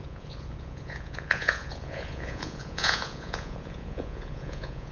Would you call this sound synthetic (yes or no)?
yes